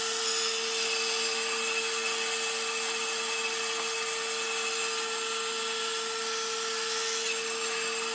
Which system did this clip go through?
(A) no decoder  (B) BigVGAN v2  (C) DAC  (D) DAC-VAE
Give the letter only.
A